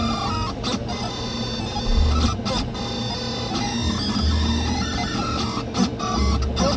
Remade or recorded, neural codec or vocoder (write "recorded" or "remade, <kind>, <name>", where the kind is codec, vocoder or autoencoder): recorded